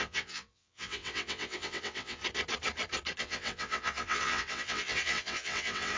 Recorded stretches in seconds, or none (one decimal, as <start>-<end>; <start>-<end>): 2.2-3.2